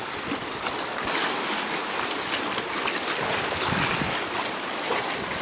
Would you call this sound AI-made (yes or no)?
no